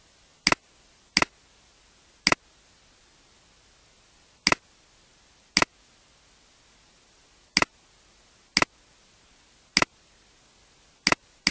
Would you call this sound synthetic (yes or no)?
no